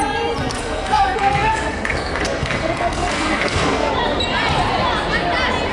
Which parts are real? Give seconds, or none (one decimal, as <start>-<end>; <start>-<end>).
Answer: 0.0-0.5; 3.9-5.7

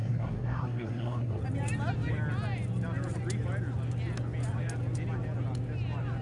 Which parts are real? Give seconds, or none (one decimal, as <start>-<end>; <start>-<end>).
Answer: 1.4-6.2

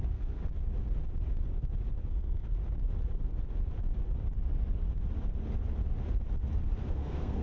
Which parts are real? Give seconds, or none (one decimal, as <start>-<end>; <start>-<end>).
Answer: 0.4-2.1; 2.6-6.9